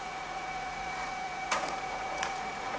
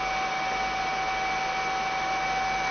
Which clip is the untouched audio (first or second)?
second